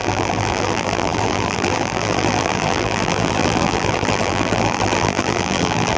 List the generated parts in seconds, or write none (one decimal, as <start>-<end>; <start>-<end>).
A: 0.0-6.0